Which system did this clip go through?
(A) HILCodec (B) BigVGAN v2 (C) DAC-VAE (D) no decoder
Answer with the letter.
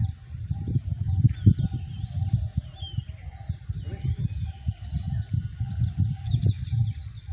D